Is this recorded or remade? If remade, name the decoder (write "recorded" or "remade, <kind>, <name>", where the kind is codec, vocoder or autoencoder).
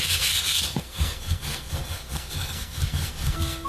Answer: remade, codec, SNAC